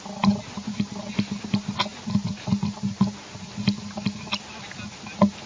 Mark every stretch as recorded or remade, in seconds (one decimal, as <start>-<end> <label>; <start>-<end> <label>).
0.0-5.5 recorded